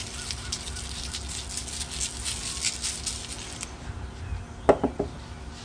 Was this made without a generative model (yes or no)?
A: yes